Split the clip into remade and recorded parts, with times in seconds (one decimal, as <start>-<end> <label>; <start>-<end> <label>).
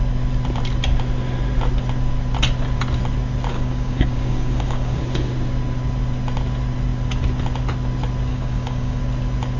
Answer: 0.0-3.5 recorded; 3.5-5.0 remade; 5.0-8.3 recorded; 8.3-9.0 remade; 9.0-9.6 recorded